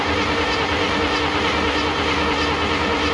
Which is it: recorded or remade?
recorded